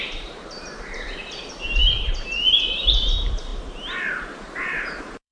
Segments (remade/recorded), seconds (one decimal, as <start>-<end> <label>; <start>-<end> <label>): 0.0-1.8 remade; 1.8-2.8 recorded; 2.8-5.3 remade